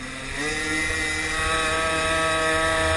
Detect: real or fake real